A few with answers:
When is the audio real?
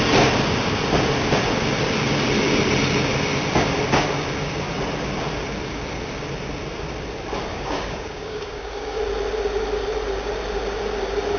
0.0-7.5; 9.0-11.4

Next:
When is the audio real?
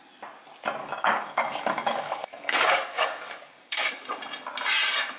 0.0-0.8; 3.9-5.2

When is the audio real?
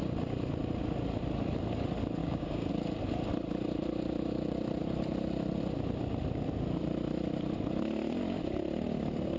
0.0-2.2; 2.7-9.4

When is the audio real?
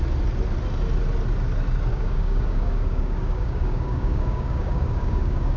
0.0-1.9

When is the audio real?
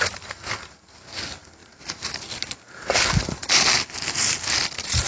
0.0-5.1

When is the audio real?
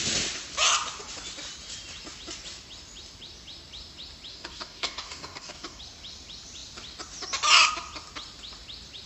0.0-4.3; 5.8-9.1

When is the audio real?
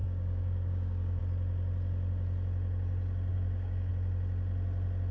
1.2-3.3; 3.9-5.1